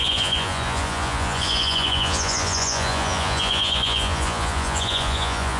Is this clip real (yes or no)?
no